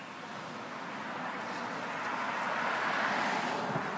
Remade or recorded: recorded